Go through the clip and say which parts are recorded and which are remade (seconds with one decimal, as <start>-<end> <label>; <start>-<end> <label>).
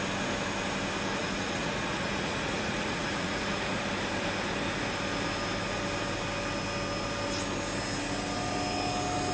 0.0-1.2 recorded; 1.2-3.8 remade; 3.8-9.3 recorded